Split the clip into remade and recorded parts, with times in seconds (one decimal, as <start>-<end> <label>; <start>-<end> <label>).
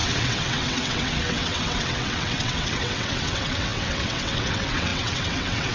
0.0-5.7 remade